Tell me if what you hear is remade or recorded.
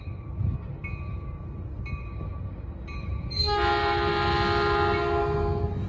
recorded